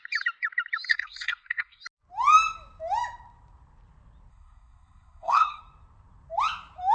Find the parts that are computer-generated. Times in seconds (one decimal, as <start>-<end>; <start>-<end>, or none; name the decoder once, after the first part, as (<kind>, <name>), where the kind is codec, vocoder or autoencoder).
0.9-1.8 (codec, SNAC); 4.3-5.6